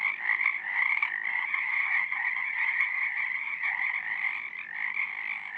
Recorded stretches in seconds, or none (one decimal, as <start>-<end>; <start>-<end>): 0.0-1.3; 3.9-5.6